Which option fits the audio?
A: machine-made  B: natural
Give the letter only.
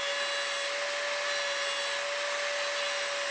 B